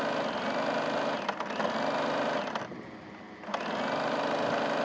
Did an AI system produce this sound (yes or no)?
no